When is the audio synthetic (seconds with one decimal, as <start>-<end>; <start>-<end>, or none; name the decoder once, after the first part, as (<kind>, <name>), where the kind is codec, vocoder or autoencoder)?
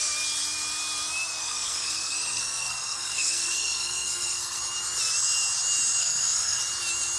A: 1.4-4.6 (codec, SNAC); 6.0-6.6